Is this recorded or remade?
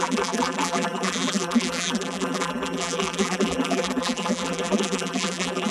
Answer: remade